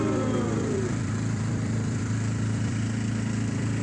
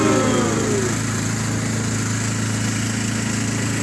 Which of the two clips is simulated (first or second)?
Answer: first